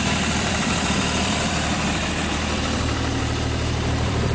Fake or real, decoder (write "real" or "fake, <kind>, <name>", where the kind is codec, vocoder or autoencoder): fake, vocoder, BigVGAN v2